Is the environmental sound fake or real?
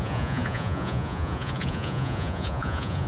fake